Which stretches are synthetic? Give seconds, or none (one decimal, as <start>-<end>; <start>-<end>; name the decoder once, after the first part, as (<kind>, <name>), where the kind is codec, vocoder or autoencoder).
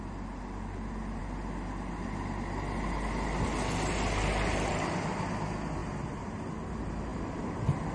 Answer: 5.8-6.5 (vocoder, BigVGAN v2)